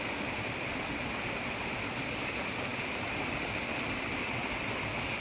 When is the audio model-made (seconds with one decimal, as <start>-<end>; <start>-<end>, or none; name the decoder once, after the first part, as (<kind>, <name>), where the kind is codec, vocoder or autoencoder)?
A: none